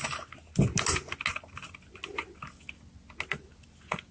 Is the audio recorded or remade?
recorded